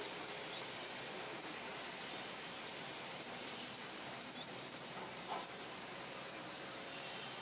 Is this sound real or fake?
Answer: fake